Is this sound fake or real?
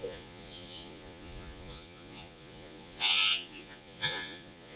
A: fake